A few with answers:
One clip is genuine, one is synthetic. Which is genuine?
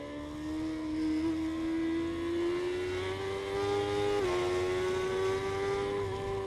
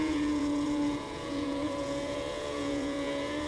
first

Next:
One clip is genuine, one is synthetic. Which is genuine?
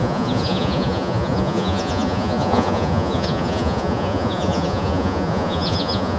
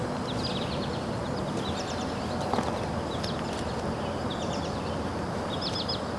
second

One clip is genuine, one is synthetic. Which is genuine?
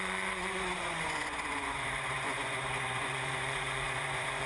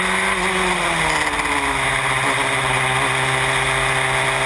second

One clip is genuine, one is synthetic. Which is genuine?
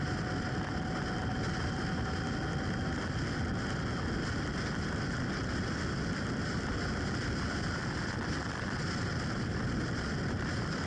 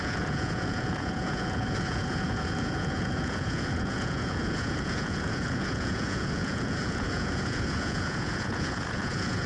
first